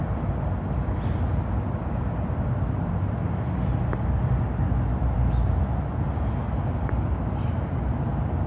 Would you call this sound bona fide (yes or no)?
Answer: yes